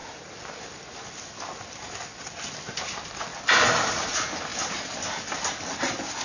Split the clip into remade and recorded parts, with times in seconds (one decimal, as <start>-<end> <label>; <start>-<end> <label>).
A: 0.0-6.2 recorded